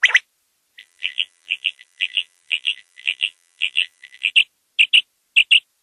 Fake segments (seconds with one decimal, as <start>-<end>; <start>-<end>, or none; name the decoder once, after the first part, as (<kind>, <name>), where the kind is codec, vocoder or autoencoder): 0.8-4.3 (vocoder, BigVGAN v2)